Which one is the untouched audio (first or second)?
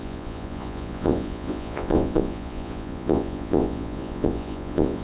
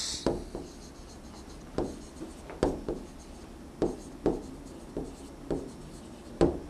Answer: second